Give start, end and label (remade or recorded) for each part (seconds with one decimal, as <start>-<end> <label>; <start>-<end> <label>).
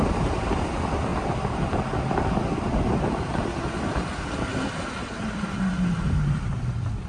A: 0.0-1.1 remade; 1.1-3.7 recorded; 3.7-4.5 remade; 4.5-6.0 recorded; 6.0-7.1 remade